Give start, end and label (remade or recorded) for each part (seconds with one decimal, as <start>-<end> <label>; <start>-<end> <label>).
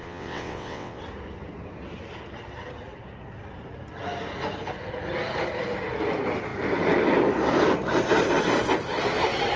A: 0.0-1.0 remade; 1.0-9.6 recorded